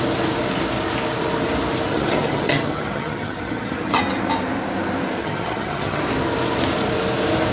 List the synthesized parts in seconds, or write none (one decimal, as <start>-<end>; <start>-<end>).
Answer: 1.9-4.0; 5.2-6.0